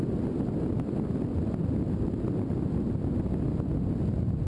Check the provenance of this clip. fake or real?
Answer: real